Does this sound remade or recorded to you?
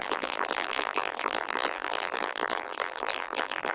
remade